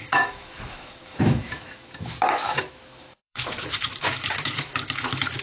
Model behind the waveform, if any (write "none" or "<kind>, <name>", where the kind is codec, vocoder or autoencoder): autoencoder, DAC-VAE